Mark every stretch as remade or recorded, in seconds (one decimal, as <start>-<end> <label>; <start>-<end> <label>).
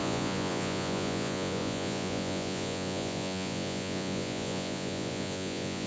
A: 0.0-5.9 remade